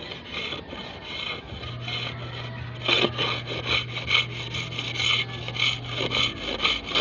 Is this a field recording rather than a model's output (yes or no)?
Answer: yes